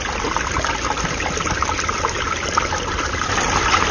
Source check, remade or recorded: recorded